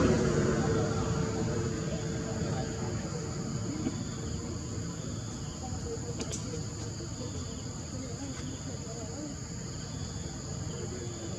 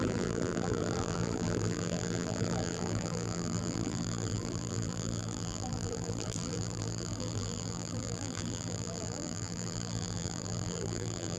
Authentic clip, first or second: first